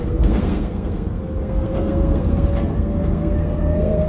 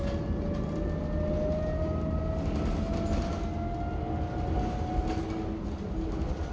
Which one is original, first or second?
second